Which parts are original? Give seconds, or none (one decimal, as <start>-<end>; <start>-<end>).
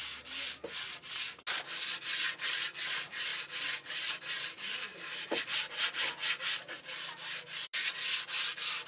0.0-8.9